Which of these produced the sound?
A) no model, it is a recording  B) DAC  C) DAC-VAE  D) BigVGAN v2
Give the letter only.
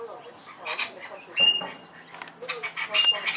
A